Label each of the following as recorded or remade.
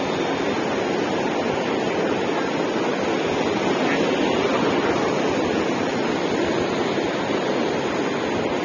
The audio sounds recorded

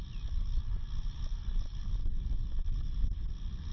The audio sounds recorded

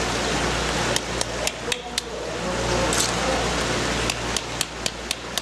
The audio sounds recorded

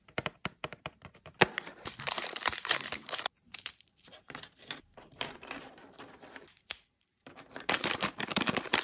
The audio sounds remade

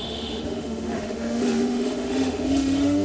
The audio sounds remade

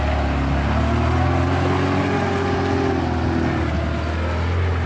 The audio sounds recorded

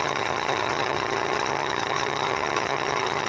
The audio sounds remade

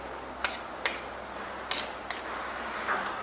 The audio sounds recorded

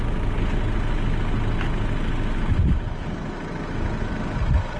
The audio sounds recorded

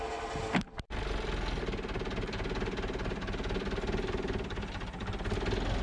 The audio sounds recorded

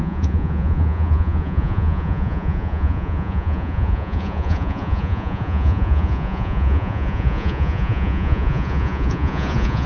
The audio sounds remade